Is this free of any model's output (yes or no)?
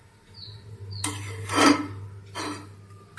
no